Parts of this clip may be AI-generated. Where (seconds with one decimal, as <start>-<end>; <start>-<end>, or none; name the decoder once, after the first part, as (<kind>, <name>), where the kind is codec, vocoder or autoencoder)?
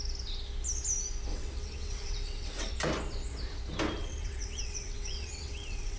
1.3-2.7 (vocoder, WaveNeXt); 4.0-6.0